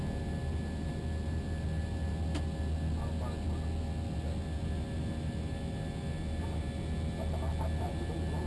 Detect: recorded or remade recorded